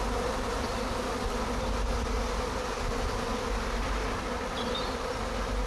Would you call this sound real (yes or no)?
yes